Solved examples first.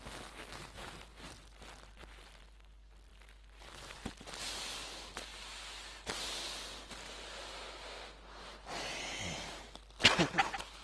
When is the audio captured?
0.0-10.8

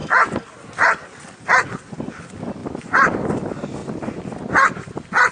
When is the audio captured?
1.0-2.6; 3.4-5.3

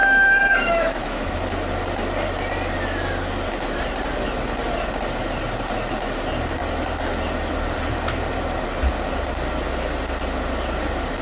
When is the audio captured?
1.4-11.2

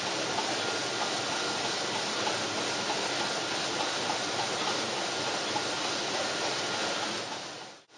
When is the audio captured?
0.0-8.0

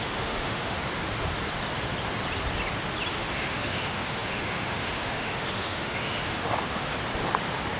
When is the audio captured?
0.8-3.1; 6.9-7.8